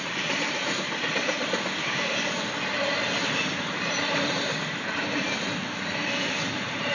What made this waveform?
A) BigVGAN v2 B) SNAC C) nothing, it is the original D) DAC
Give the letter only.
A